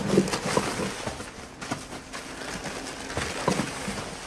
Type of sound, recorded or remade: recorded